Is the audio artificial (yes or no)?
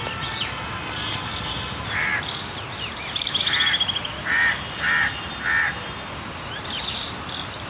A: no